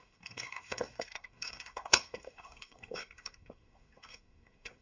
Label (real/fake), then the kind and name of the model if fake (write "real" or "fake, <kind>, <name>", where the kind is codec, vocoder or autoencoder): fake, codec, SNAC